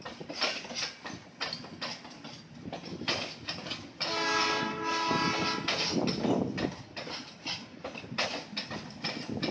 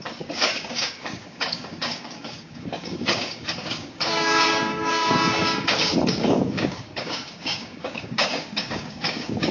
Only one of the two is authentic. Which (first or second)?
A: first